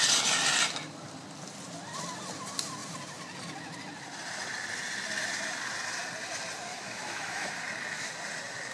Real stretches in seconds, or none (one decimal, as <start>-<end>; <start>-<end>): 0.0-6.7; 7.5-8.7